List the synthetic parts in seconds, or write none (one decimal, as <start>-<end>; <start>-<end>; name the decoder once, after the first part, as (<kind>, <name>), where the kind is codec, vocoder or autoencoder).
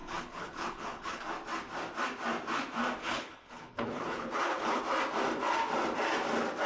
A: 0.0-1.2 (codec, HILCodec); 3.0-4.8